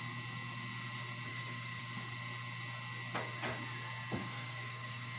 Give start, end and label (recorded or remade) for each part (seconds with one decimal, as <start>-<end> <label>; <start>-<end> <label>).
0.0-1.3 recorded; 1.3-1.8 remade; 1.8-4.2 recorded; 4.2-5.2 remade